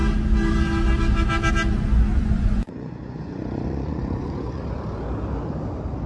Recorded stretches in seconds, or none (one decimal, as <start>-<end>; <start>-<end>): 0.0-2.1; 4.6-6.1